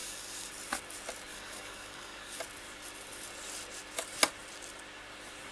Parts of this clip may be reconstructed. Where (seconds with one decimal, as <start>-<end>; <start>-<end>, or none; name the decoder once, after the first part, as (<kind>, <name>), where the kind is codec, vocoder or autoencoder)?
0.0-0.5 (codec, DAC); 1.3-2.4

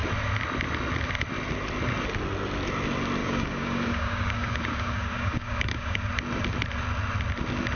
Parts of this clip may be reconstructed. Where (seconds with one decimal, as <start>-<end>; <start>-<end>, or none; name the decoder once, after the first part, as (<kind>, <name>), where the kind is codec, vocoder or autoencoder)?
3.2-6.1 (codec, DAC)

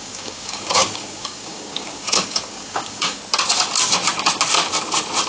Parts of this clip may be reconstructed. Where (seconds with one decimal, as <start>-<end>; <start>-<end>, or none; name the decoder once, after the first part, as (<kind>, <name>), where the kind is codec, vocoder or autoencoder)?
0.0-3.2 (codec, DAC)

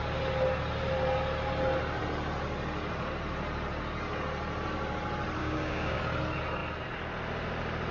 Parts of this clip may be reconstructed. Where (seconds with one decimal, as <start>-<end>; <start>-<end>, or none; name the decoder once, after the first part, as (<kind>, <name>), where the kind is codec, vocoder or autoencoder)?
5.4-6.0 (codec, DAC)

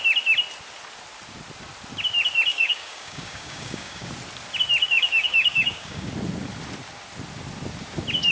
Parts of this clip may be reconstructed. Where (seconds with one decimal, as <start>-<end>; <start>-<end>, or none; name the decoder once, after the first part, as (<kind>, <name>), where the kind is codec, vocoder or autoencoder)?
2.5-4.1 (codec, DAC); 4.8-6.1

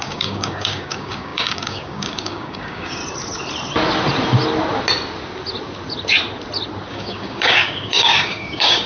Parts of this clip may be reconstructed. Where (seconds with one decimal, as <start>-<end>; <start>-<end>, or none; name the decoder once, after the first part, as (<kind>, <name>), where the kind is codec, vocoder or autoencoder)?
0.0-3.0 (codec, DAC); 6.9-8.9

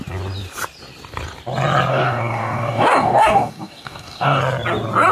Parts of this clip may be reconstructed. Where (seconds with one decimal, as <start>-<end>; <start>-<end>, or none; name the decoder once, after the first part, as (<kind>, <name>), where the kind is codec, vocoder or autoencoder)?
1.9-4.4 (codec, DAC)

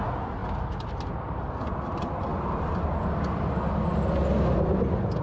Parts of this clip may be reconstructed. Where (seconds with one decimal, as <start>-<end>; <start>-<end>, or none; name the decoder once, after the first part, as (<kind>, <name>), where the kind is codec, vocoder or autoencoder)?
none